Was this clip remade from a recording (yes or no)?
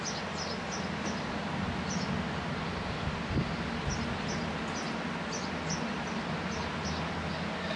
no